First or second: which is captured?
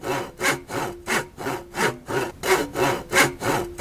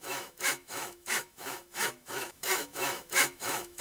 first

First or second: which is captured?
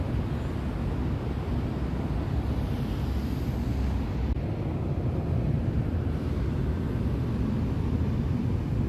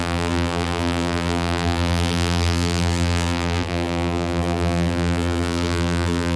first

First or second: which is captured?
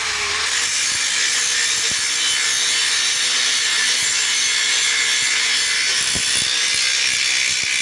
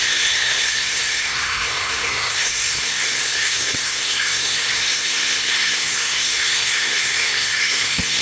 first